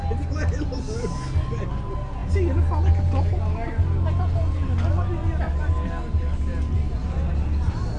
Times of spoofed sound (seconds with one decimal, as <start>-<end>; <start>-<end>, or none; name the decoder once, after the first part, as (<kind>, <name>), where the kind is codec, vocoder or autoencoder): none